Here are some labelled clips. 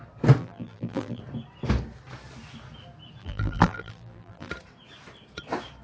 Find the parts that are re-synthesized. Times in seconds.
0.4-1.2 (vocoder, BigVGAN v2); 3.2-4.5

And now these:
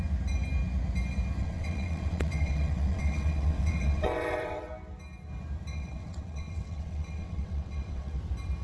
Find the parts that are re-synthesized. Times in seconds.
1.4-4.7 (vocoder, WaveNeXt); 5.7-8.2

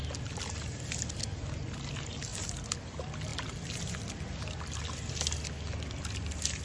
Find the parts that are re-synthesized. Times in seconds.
none